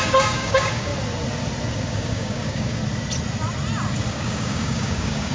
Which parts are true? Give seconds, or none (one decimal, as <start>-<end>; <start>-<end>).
0.9-1.7; 2.8-4.1